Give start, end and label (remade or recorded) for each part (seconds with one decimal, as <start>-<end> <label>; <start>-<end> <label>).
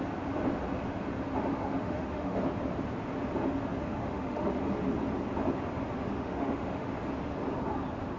0.0-1.4 recorded; 1.4-2.4 remade; 2.4-3.9 recorded; 3.9-4.6 remade; 4.6-6.1 recorded; 6.1-6.9 remade; 6.9-8.2 recorded